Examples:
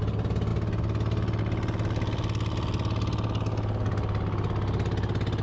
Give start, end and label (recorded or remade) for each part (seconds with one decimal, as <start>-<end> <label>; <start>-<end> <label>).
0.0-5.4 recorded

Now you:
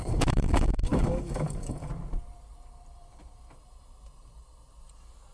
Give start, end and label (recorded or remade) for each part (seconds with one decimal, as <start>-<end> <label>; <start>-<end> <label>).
0.0-1.9 remade; 1.9-5.3 recorded

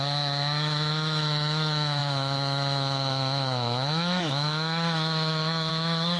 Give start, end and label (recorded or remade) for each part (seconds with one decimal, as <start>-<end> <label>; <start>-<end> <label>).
0.0-6.2 remade

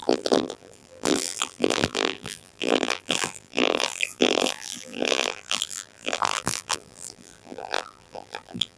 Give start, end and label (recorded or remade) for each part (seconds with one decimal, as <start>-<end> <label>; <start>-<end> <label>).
0.0-8.8 remade